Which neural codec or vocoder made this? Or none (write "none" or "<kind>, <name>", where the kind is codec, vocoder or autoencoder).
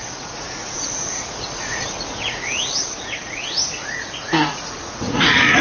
vocoder, Vocos